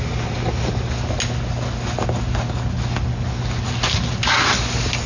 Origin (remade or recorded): recorded